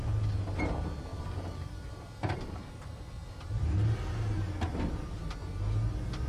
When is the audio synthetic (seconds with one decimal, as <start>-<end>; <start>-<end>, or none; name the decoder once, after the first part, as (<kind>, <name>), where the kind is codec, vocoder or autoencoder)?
1.1-2.5 (vocoder, BigVGAN v2)